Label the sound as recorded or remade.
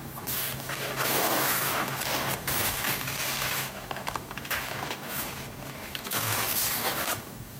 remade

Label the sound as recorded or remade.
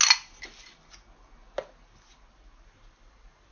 recorded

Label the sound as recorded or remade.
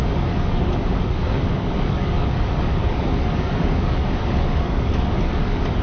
remade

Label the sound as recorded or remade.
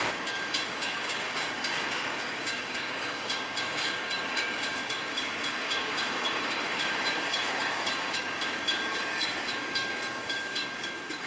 remade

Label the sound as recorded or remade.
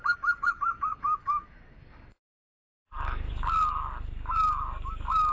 remade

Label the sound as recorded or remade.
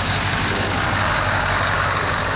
remade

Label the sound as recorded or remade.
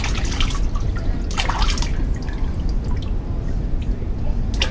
recorded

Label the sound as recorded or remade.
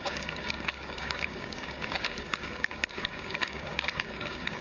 remade